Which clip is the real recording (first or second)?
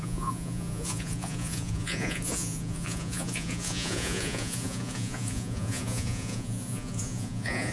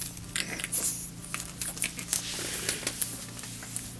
second